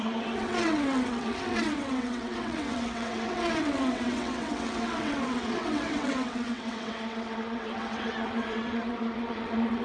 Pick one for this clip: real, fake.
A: fake